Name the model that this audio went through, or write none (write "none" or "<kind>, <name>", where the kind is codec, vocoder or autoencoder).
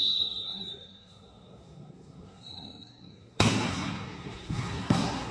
codec, SNAC